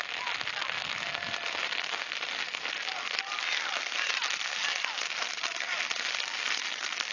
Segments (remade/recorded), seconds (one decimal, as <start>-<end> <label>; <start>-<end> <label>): 0.0-7.1 recorded